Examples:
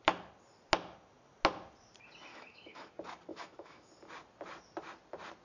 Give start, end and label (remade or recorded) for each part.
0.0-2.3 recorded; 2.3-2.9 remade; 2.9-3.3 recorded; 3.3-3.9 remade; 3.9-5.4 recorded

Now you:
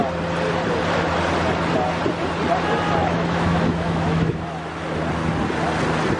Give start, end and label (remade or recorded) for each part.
0.0-3.0 recorded; 3.0-4.4 remade; 4.4-6.2 recorded

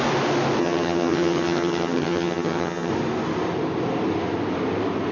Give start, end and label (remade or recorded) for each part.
0.0-0.6 recorded; 0.6-2.9 remade; 2.9-5.1 recorded

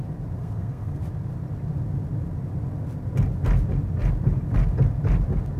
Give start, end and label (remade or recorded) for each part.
0.0-0.4 recorded; 0.4-1.0 remade; 1.0-5.6 recorded

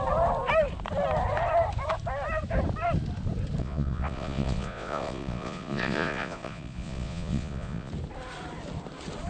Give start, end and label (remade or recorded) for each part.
0.0-3.6 recorded; 3.6-7.9 remade; 7.9-9.3 recorded

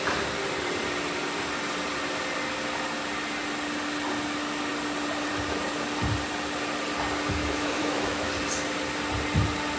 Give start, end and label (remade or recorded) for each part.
0.0-7.4 recorded; 7.4-8.3 remade; 8.3-9.8 recorded

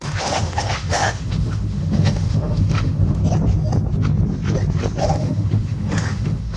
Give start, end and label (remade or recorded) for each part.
0.0-3.2 remade; 3.2-5.0 recorded; 5.0-6.6 remade